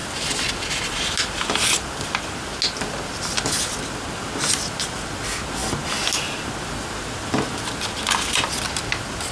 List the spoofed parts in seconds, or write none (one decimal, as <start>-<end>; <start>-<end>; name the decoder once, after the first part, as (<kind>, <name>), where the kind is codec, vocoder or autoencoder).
none